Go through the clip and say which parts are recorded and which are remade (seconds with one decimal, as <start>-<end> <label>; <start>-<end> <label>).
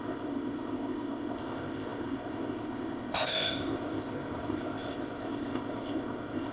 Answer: 0.0-6.5 remade